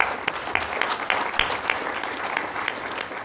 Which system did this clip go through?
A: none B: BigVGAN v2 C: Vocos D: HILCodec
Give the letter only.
B